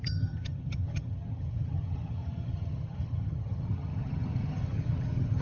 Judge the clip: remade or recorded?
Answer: remade